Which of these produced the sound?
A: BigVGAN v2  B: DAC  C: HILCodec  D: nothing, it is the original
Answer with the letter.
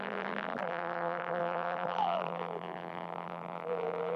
A